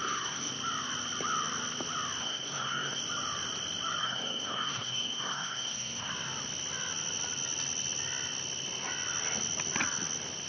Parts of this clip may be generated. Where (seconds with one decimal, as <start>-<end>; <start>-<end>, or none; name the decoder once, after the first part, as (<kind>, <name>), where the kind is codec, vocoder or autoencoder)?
0.0-0.5 (codec, SNAC); 2.2-3.0; 4.0-6.1